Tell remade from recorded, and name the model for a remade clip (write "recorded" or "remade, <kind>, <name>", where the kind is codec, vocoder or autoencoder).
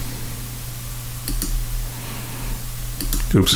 recorded